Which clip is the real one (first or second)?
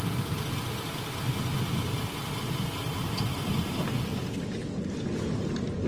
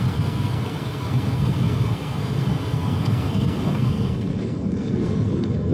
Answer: first